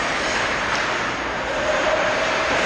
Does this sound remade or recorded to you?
remade